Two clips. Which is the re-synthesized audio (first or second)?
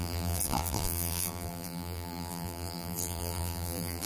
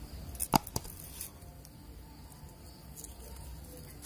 first